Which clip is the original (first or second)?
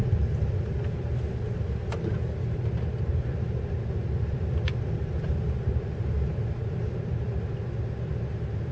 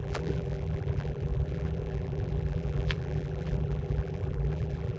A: first